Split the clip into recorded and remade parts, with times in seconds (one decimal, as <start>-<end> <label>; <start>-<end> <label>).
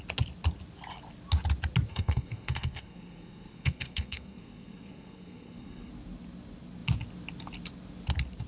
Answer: 0.0-1.9 recorded; 1.9-5.9 remade; 5.9-8.5 recorded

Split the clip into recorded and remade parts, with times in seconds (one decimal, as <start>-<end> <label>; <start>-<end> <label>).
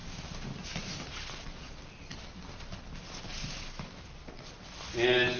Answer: 0.0-5.4 recorded